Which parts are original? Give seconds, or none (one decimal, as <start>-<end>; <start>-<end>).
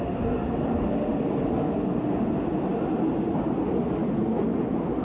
0.0-5.0